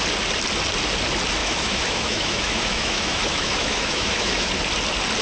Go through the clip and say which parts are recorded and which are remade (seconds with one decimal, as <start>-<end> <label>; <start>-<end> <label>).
0.0-1.4 recorded; 1.4-4.5 remade; 4.5-5.2 recorded